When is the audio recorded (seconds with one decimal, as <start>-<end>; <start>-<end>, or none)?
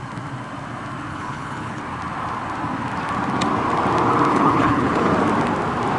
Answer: 0.0-1.1; 1.8-4.3; 5.1-6.0